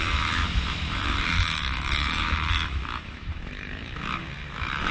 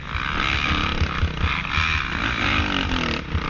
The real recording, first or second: second